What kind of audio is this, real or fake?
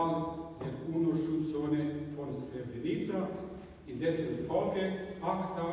real